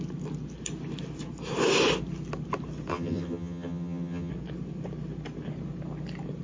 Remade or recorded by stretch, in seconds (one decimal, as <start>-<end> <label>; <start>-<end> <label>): 0.0-2.9 recorded; 2.9-4.3 remade; 4.3-6.4 recorded

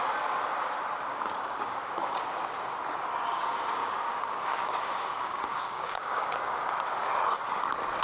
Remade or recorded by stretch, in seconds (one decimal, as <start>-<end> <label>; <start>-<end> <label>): 0.0-1.1 recorded; 1.1-2.1 remade; 2.1-3.8 recorded; 3.8-6.7 remade; 6.7-8.0 recorded

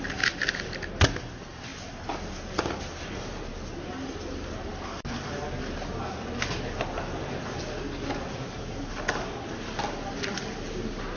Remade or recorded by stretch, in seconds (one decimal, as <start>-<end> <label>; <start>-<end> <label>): 0.0-11.2 recorded

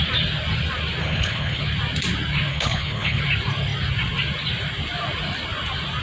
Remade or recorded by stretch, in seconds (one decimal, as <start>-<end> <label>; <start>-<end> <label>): 0.0-1.0 recorded; 1.0-1.6 remade; 1.6-2.5 recorded; 2.5-3.2 remade; 3.2-6.0 recorded